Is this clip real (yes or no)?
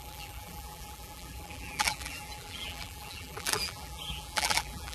no